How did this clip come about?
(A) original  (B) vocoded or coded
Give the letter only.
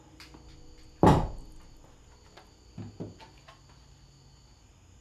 A